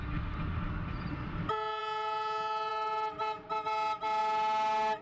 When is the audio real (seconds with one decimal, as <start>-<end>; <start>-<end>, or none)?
0.0-5.0